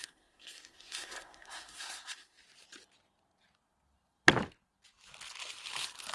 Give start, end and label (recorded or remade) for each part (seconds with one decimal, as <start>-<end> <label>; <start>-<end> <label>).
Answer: 0.0-2.4 remade; 2.4-6.1 recorded